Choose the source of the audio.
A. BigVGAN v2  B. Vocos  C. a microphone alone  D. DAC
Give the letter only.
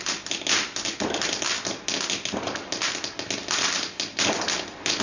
C